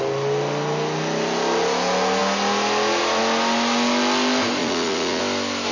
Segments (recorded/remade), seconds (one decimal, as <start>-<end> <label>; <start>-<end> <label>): 0.0-4.6 recorded; 4.6-5.2 remade; 5.2-5.7 recorded